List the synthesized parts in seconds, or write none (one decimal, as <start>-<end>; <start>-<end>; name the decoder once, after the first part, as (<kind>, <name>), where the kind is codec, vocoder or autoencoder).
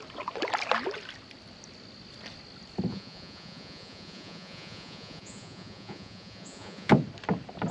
2.9-6.9 (vocoder, Vocos)